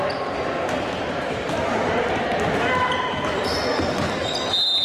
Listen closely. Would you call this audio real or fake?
real